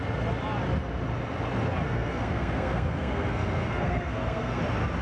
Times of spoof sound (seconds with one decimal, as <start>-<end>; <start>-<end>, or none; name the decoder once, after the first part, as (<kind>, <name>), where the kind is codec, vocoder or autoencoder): 1.9-4.6 (codec, SNAC)